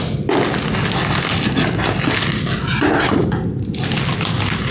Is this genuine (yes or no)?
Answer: yes